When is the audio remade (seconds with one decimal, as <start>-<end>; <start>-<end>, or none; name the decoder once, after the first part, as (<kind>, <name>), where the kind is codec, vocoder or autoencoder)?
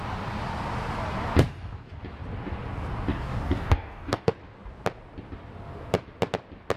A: 1.5-2.0 (codec, DAC); 3.1-4.3